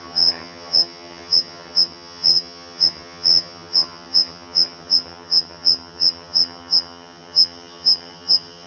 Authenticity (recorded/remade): remade